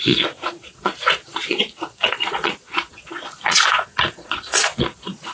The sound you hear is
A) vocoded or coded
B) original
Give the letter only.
A